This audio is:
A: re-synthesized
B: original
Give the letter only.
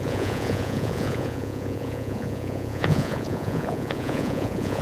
A